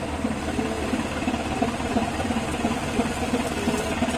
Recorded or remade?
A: recorded